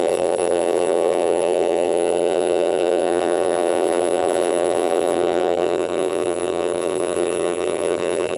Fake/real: fake